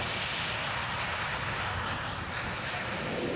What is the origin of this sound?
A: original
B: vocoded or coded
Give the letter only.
A